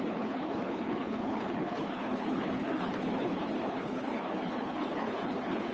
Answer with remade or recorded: remade